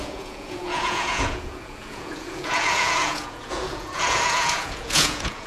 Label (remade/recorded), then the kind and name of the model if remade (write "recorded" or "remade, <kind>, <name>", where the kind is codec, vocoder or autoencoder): remade, vocoder, Vocos